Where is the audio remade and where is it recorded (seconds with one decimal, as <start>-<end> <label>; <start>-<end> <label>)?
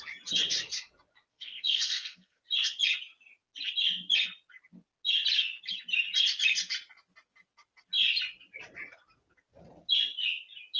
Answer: 0.0-1.3 recorded; 1.3-2.4 remade; 2.4-10.8 recorded